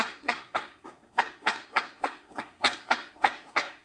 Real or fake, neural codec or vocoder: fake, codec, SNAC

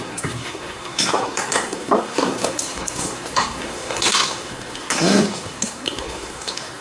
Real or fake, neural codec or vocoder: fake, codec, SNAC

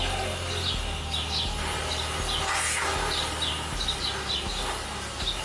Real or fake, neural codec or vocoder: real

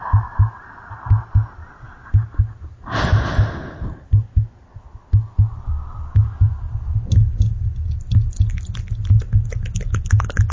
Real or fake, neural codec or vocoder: real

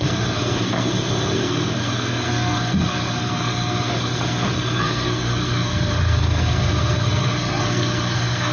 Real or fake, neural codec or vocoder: fake, codec, SNAC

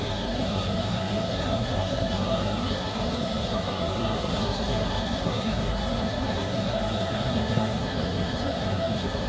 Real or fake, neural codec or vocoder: fake, codec, SNAC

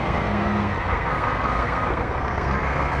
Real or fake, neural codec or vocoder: fake, codec, SNAC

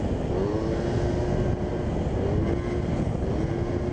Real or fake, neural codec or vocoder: real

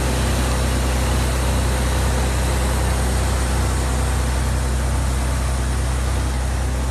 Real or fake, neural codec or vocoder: real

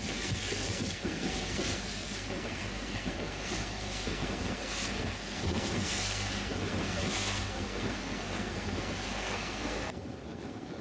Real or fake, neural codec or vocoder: fake, codec, SNAC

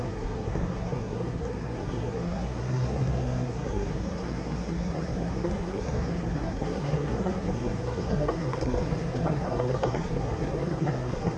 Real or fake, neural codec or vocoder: fake, codec, SNAC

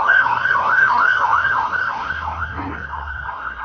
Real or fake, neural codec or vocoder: fake, codec, SNAC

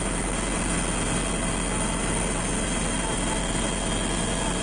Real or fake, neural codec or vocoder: real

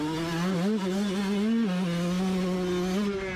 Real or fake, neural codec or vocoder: real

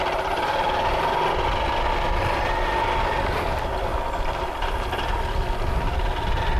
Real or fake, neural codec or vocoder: real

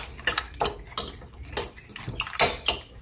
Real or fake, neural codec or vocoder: real